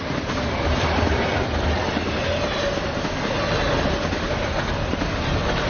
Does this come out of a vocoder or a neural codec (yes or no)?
no